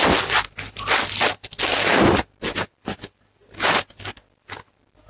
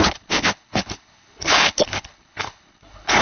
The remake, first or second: second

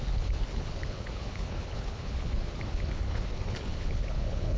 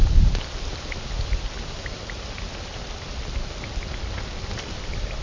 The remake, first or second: first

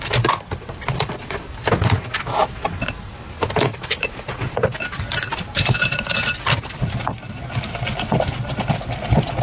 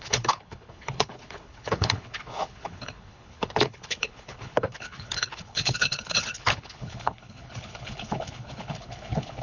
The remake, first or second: second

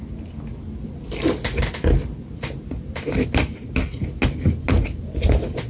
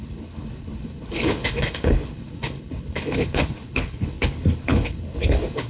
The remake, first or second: second